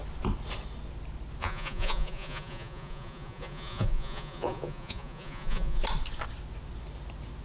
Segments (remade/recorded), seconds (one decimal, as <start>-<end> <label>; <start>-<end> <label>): 0.0-1.4 recorded; 1.4-5.8 remade; 5.8-7.4 recorded